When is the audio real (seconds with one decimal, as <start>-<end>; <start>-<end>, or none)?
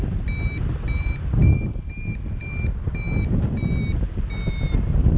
0.0-5.2